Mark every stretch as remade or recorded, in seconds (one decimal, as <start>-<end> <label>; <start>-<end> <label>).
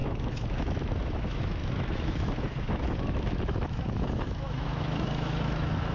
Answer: 0.0-5.9 remade